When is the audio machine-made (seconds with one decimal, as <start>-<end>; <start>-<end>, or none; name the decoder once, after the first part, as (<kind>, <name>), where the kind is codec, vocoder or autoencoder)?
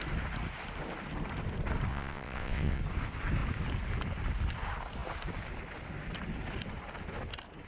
1.9-2.8 (vocoder, WaveNeXt)